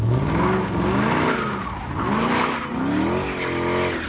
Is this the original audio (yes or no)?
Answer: yes